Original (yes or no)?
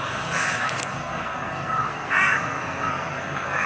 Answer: no